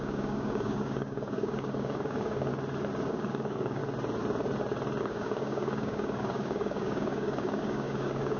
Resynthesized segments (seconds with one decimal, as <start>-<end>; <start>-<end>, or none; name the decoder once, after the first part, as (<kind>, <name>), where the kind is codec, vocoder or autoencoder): 0.0-2.5 (codec, DAC); 3.1-3.8; 5.0-8.4